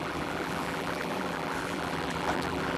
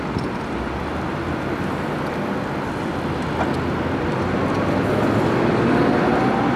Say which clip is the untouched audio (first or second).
second